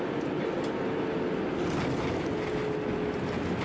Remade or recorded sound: recorded